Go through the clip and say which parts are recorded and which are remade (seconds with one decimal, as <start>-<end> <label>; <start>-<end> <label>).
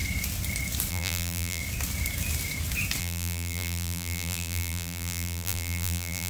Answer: 0.0-0.9 recorded; 0.9-1.6 remade; 1.6-3.0 recorded; 3.0-6.3 remade